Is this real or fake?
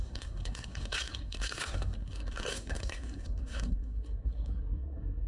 fake